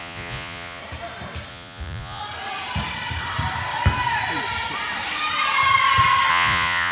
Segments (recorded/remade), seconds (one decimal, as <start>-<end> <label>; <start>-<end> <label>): 0.0-0.8 remade; 0.8-1.5 recorded; 1.5-2.2 remade; 2.2-6.3 recorded; 6.3-6.9 remade